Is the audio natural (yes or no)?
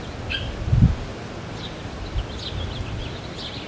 yes